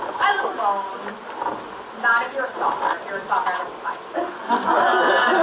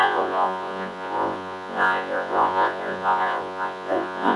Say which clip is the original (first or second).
first